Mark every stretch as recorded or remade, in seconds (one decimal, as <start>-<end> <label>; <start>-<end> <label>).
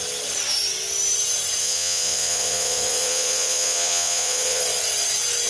0.0-1.6 recorded; 1.6-4.6 remade; 4.6-5.5 recorded